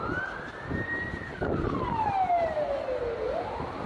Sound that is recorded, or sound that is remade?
recorded